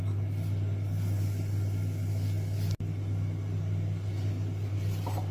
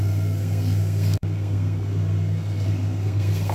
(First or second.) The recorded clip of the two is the first